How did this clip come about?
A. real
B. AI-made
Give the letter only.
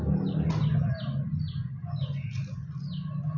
A